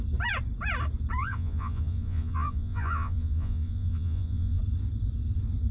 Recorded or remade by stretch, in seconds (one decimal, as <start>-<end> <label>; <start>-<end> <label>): 0.0-1.2 recorded; 1.2-4.6 remade; 4.6-5.7 recorded